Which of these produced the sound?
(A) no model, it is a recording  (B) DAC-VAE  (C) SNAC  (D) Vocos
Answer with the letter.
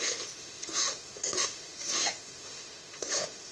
B